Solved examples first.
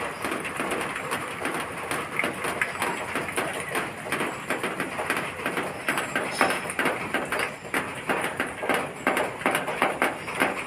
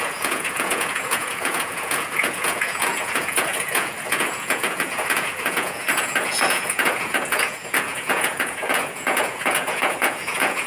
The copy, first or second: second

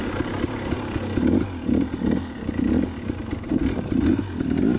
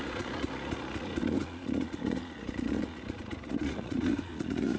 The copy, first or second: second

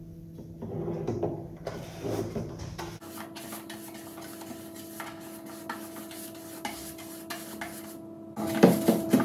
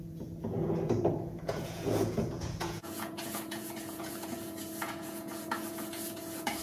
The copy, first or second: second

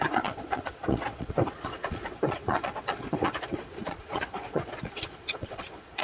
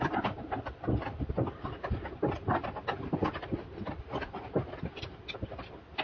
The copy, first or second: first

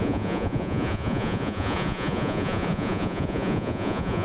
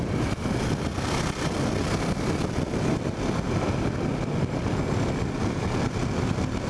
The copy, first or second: first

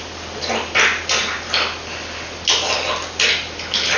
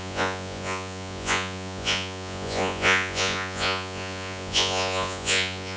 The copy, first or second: second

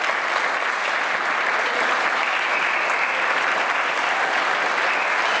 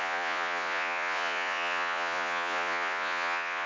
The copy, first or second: second